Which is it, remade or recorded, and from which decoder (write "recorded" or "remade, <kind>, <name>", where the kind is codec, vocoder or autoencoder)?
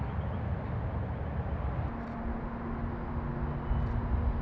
recorded